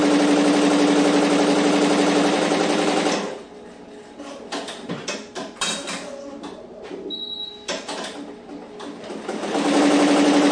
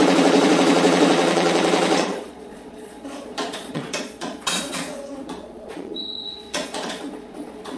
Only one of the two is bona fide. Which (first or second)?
first